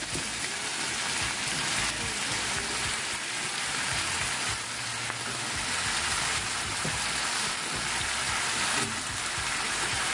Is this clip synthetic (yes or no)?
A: no